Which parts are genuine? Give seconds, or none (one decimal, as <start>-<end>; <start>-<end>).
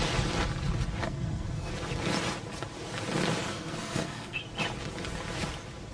0.0-1.0; 1.7-3.4; 4.4-5.9